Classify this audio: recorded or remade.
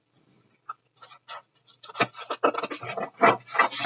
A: recorded